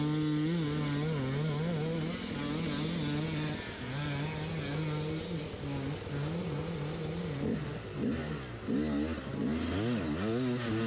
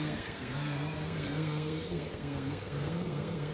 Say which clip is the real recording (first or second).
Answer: first